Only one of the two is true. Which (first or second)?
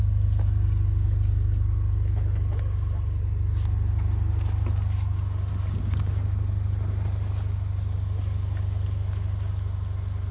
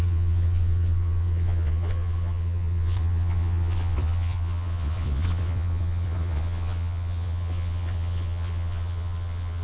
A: first